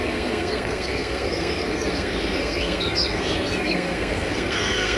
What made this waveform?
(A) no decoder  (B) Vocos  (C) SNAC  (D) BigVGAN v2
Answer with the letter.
C